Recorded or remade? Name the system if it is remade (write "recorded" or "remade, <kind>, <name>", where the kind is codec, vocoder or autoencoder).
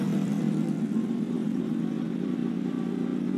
remade, vocoder, BigVGAN v2